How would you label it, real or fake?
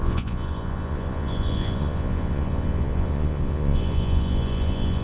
fake